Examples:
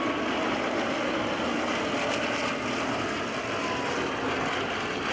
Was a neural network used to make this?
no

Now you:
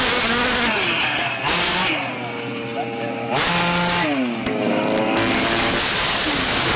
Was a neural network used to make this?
no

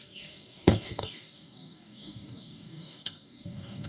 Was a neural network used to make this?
yes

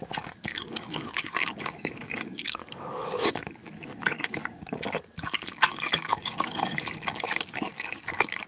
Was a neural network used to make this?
yes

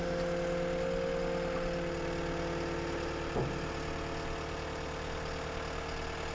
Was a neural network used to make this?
no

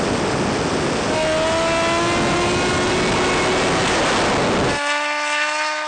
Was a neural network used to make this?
no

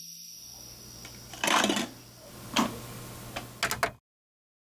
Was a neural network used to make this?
no